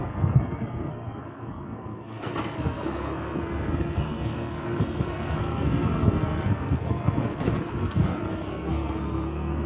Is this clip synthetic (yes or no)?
yes